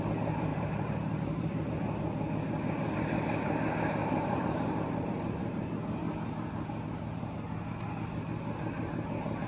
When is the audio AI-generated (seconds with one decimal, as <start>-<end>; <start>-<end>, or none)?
0.5-1.7; 4.0-7.8